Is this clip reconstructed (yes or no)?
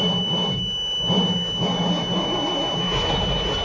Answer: no